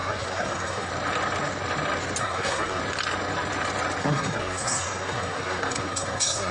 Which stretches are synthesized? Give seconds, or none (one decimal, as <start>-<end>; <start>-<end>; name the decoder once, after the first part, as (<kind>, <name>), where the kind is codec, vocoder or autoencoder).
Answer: 0.0-0.9 (codec, SNAC); 2.2-2.8; 4.0-6.5